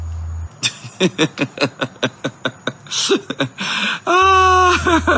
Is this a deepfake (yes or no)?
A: no